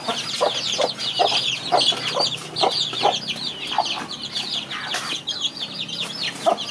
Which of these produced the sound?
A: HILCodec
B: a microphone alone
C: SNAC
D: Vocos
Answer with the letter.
B